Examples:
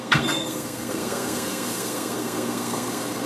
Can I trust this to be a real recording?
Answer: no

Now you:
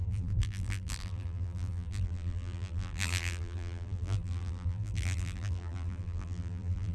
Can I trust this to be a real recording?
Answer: no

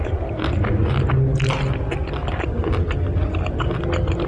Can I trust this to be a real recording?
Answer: yes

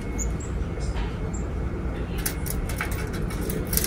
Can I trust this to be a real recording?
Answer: yes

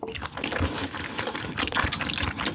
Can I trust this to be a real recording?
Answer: yes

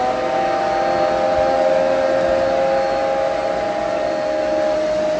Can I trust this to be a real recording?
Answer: yes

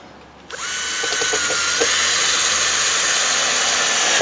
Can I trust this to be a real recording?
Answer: yes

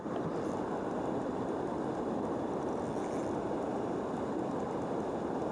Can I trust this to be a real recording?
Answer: yes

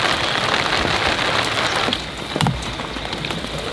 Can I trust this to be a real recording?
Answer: yes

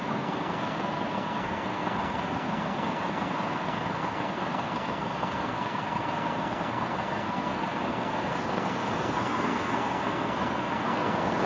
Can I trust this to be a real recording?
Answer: no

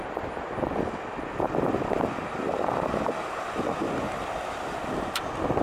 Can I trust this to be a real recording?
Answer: yes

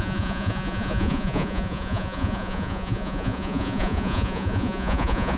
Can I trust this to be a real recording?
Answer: no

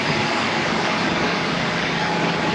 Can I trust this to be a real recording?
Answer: no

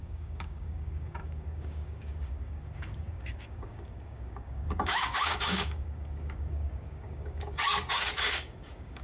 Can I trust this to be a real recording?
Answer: no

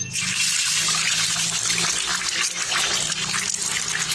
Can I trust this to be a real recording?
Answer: yes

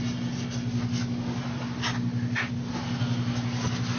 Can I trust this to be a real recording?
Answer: yes